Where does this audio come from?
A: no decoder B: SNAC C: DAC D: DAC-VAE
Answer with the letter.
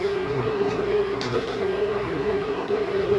B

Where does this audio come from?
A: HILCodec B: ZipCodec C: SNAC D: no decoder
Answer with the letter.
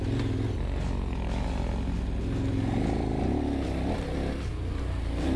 D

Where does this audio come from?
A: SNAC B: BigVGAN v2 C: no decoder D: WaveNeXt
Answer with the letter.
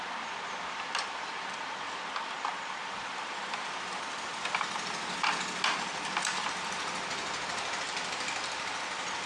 C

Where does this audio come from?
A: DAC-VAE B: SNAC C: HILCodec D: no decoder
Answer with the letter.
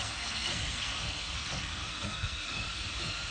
B